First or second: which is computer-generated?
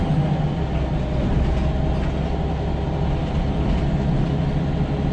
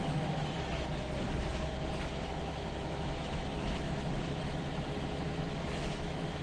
second